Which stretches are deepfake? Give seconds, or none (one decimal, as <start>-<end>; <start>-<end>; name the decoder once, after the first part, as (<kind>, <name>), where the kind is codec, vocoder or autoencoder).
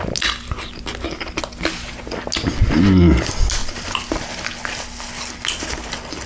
none